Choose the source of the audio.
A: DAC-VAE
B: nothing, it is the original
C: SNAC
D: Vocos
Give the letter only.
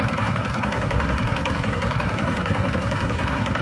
C